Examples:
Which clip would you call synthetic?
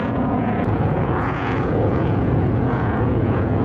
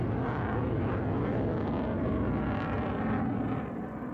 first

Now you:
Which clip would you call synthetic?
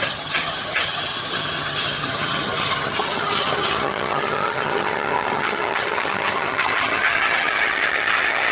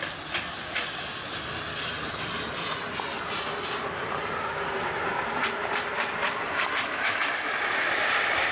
first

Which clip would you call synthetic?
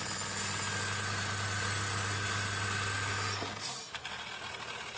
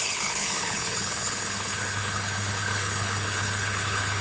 second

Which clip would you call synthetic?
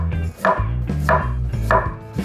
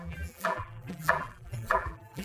second